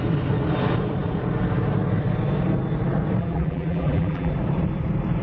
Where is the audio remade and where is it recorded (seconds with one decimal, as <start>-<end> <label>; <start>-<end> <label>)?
0.0-3.2 recorded; 3.2-4.3 remade; 4.3-5.2 recorded